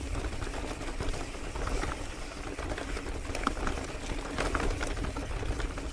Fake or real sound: real